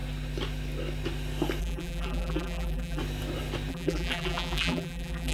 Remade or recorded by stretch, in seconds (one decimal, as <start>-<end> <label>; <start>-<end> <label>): 0.0-1.6 recorded; 1.6-3.0 remade; 3.0-3.7 recorded; 3.7-5.3 remade